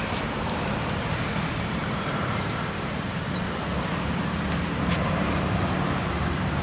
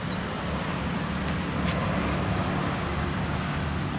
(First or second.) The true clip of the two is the second